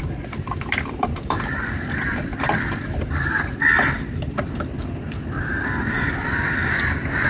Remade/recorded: remade